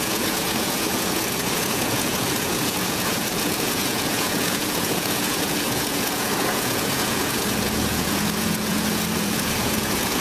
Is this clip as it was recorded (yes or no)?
no